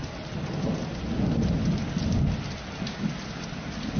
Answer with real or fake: real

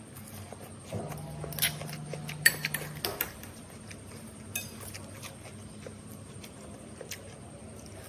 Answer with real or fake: real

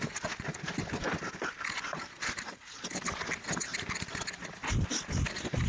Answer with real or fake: real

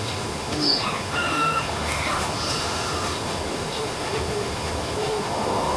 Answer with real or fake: fake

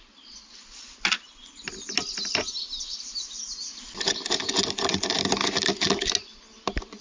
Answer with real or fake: real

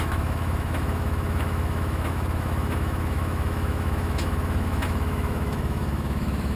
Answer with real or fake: fake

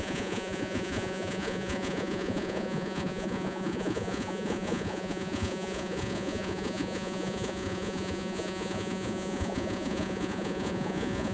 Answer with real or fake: fake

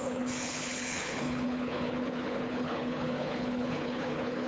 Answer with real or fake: fake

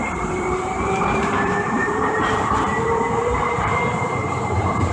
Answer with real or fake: fake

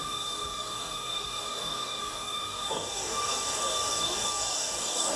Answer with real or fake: fake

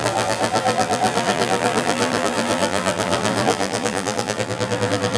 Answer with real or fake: fake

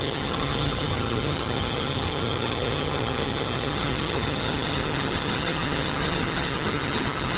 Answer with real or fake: fake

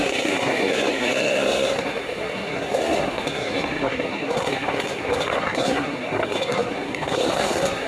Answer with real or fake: fake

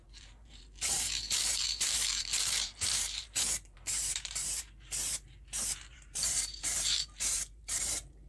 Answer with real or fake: fake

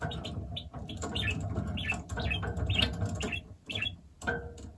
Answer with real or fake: real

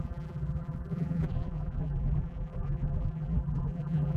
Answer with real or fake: fake